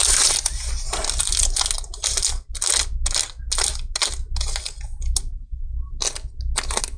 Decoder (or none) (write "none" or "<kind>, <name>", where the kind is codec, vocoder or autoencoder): none